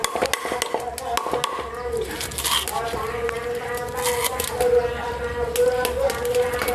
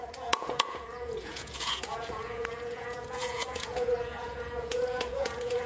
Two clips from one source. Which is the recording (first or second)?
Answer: first